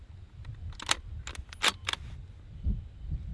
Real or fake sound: real